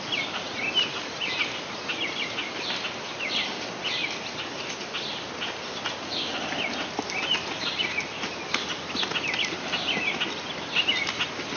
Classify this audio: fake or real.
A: real